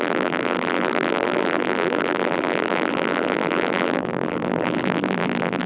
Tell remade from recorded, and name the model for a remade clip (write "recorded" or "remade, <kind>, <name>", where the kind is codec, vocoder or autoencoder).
remade, vocoder, BigVGAN v2